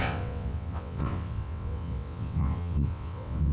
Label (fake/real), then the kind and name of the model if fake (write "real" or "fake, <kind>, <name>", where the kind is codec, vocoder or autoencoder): fake, vocoder, WaveNeXt